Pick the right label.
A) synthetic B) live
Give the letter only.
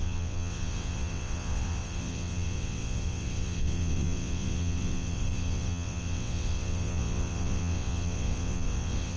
A